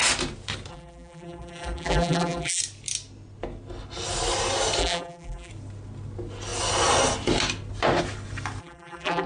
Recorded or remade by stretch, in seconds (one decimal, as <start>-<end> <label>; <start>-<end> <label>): 0.0-0.7 recorded; 0.7-2.6 remade; 2.6-4.8 recorded; 4.8-5.5 remade; 5.5-8.6 recorded; 8.6-9.3 remade